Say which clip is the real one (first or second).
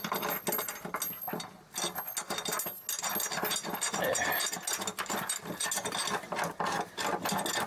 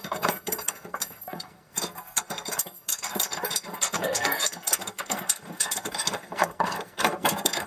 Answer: first